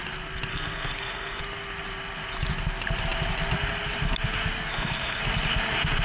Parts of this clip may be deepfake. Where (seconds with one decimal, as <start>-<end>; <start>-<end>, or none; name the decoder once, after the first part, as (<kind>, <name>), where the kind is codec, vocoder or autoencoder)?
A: 0.5-1.4 (codec, SNAC); 4.7-5.2